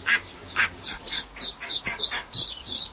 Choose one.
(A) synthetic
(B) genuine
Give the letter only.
A